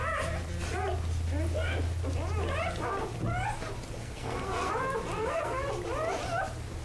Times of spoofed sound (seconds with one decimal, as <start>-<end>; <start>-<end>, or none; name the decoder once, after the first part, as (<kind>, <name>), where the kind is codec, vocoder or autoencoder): 4.0-4.7 (codec, SNAC); 5.2-5.7

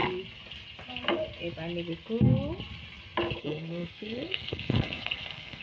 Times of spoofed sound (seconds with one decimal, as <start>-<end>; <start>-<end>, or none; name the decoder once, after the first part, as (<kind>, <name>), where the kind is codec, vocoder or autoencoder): 3.4-5.6 (codec, SNAC)

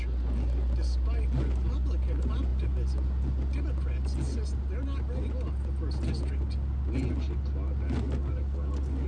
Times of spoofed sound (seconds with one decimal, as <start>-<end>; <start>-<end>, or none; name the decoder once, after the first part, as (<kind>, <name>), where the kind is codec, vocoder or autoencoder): none

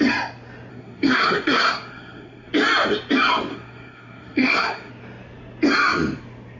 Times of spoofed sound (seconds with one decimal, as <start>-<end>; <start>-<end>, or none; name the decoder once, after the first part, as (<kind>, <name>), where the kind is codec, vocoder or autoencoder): 0.7-2.5 (codec, SNAC); 3.5-4.9

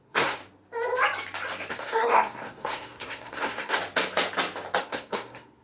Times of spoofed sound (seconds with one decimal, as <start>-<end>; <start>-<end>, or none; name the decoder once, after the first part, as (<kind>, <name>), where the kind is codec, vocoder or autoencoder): 0.0-0.4 (codec, SNAC); 1.7-3.8; 4.8-5.6